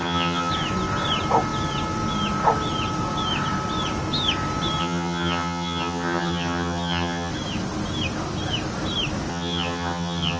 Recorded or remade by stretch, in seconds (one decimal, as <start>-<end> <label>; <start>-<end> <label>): 0.0-0.5 remade; 0.5-4.8 recorded; 4.8-7.3 remade; 7.3-9.3 recorded; 9.3-10.4 remade